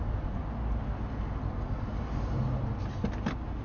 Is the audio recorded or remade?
recorded